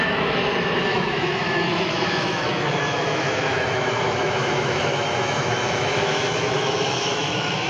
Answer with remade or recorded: remade